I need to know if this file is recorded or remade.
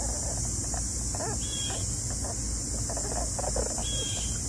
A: recorded